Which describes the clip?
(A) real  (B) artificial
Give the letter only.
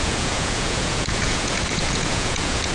B